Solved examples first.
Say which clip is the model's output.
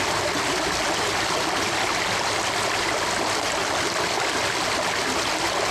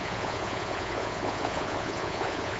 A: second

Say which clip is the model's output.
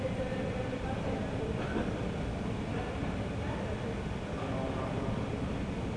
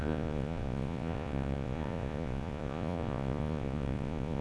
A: second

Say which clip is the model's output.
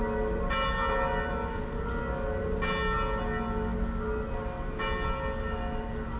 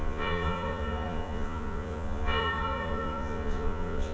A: second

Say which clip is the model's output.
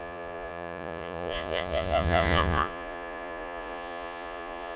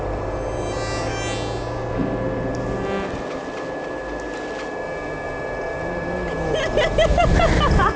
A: first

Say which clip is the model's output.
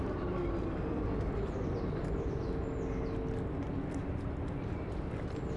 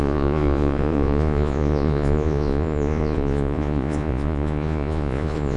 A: second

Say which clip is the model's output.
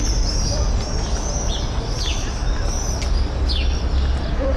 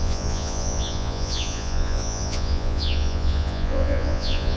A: second